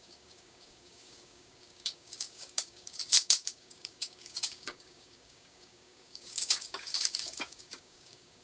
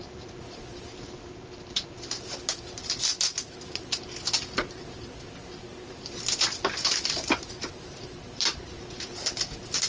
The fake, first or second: first